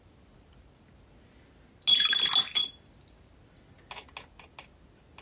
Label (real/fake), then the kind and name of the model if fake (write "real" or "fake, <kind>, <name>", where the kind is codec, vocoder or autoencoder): real